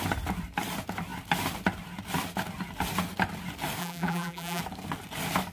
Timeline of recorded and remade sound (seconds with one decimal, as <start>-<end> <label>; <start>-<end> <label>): 0.0-3.8 recorded; 3.8-4.6 remade; 4.6-5.5 recorded